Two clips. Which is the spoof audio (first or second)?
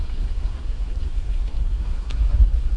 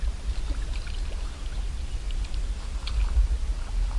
first